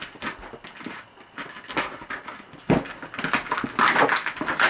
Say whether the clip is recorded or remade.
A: recorded